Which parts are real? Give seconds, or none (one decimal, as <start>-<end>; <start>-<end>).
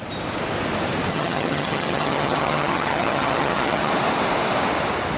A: 0.0-1.1; 3.9-5.2